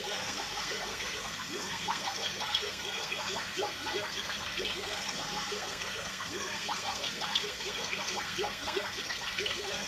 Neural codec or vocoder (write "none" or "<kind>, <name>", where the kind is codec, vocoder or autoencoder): codec, SNAC